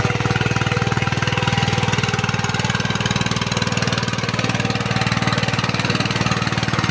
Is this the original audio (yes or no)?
yes